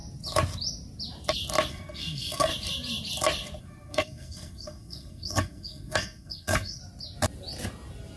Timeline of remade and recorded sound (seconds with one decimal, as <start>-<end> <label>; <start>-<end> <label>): 0.0-1.7 recorded; 1.7-2.5 remade; 2.5-3.6 recorded; 3.6-6.8 remade; 6.8-8.2 recorded